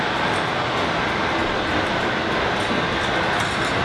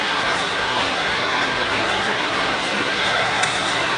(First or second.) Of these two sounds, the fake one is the second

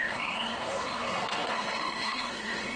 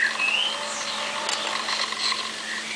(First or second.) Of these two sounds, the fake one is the first